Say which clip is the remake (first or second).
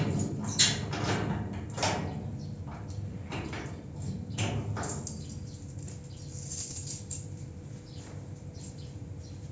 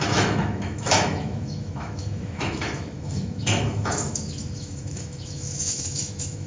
second